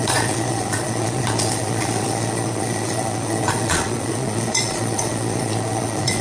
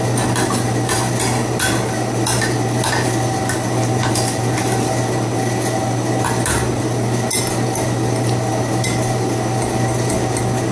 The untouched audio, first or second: second